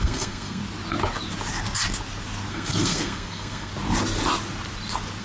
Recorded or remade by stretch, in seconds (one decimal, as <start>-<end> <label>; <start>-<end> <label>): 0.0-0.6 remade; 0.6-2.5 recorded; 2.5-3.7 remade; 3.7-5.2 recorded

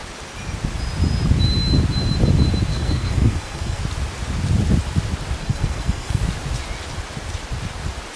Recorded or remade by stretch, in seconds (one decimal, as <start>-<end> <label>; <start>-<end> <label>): 0.0-2.7 recorded; 2.7-3.8 remade; 3.8-5.4 recorded; 5.4-6.2 remade; 6.2-8.2 recorded

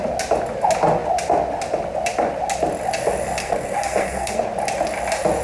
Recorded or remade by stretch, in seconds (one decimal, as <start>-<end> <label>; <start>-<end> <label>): 0.0-3.4 recorded; 3.4-4.4 remade; 4.4-5.4 recorded